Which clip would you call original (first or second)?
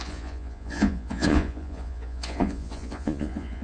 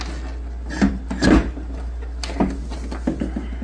second